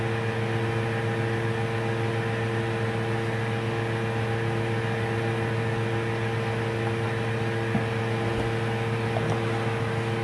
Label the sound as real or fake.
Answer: real